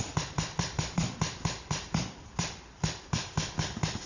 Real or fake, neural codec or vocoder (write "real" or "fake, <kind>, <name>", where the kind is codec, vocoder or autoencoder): fake, vocoder, BigVGAN v2